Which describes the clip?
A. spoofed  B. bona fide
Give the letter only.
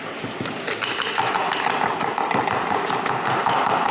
B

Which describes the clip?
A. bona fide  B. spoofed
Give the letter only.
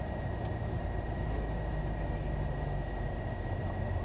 A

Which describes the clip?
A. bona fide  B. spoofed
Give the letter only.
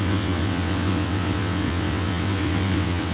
B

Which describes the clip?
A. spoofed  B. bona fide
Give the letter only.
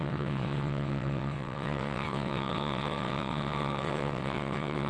A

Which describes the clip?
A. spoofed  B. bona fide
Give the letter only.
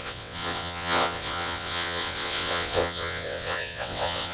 A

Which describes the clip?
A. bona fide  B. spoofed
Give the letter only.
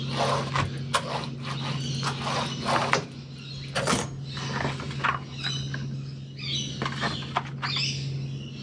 A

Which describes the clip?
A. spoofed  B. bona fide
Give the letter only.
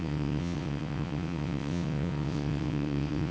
A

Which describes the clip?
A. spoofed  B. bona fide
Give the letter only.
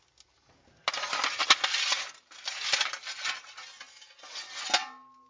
B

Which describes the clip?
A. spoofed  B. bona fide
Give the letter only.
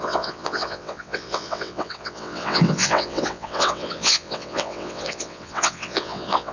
A